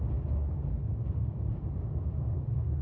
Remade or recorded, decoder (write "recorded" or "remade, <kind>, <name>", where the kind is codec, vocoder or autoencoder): recorded